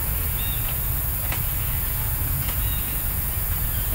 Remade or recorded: remade